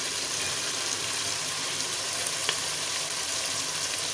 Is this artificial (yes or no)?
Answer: yes